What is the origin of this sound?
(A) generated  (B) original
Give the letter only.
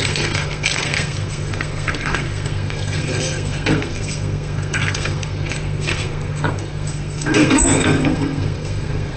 A